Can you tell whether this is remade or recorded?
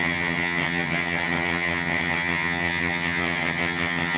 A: remade